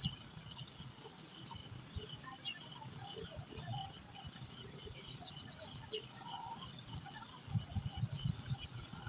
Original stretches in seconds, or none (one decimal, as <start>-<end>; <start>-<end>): 1.6-2.9; 3.8-4.8